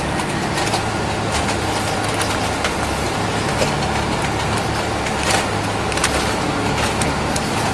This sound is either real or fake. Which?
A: real